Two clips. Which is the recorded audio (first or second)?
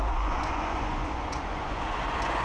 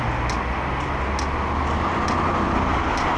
second